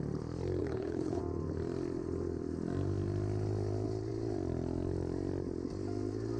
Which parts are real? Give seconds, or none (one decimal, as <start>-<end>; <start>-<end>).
0.0-0.6; 1.2-6.4